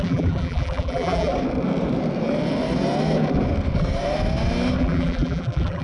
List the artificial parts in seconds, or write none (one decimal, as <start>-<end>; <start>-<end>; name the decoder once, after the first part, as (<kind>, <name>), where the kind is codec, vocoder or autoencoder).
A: 0.0-1.3 (vocoder, BigVGAN v2); 4.8-5.8